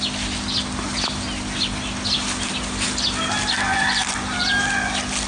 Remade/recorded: recorded